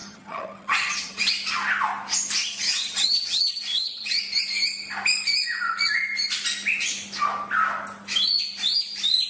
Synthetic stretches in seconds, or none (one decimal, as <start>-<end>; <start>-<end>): 0.0-1.2; 2.4-4.2